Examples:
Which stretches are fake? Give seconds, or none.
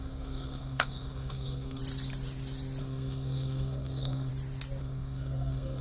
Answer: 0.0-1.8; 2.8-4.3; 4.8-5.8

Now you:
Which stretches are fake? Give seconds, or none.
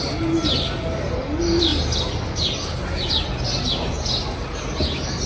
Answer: none